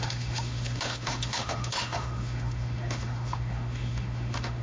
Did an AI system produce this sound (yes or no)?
yes